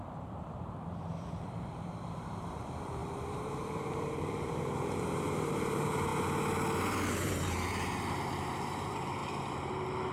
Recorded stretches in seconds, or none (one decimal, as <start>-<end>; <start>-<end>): 6.1-7.1; 9.2-10.1